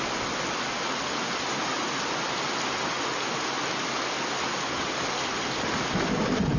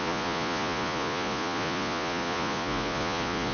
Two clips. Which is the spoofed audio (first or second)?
second